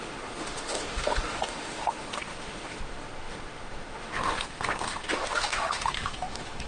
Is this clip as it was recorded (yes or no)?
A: no